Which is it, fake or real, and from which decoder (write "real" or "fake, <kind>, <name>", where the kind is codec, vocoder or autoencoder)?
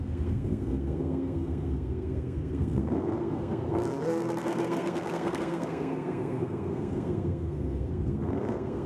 fake, codec, SNAC